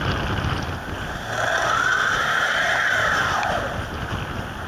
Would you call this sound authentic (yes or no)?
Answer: yes